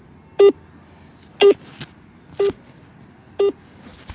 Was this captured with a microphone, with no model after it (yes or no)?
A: yes